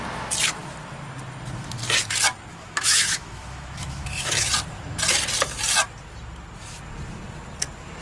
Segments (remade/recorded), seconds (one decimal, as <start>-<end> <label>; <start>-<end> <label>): 0.0-2.5 recorded; 2.5-4.5 remade; 4.5-8.0 recorded